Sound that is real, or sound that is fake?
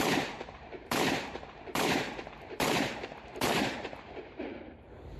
fake